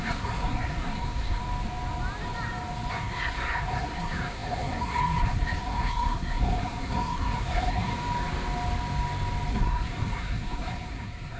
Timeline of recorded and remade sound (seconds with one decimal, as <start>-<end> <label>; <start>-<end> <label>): 0.0-1.4 remade; 1.4-2.9 recorded; 2.9-7.9 remade; 7.9-9.5 recorded; 9.5-11.4 remade